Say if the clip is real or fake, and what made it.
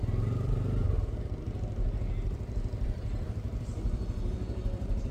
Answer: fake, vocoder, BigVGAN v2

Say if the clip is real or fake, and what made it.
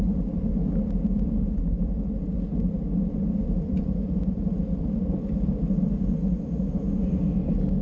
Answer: real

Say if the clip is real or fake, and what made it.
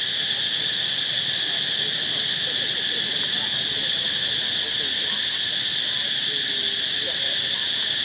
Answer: real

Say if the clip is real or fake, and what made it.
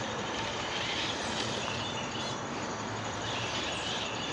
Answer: fake, vocoder, BigVGAN v2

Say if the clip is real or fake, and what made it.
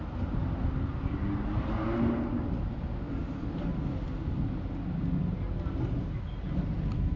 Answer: real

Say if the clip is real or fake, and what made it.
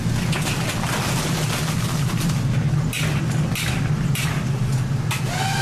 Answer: real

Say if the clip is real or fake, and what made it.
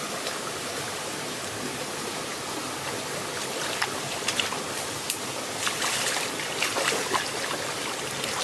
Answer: real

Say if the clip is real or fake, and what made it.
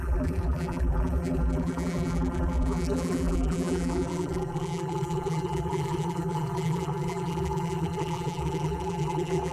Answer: fake, vocoder, BigVGAN v2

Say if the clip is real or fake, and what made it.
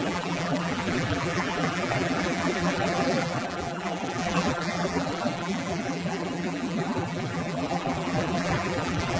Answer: fake, vocoder, BigVGAN v2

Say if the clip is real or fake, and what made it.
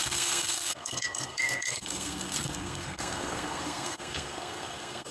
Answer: fake, codec, SNAC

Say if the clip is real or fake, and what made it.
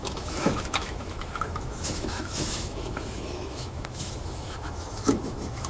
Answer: fake, autoencoder, DAC-VAE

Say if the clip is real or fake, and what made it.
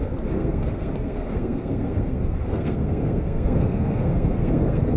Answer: fake, codec, SNAC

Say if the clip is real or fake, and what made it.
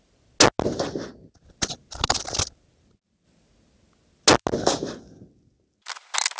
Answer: real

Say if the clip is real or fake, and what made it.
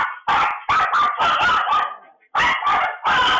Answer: real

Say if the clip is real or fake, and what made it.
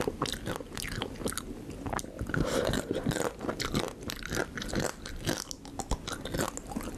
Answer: real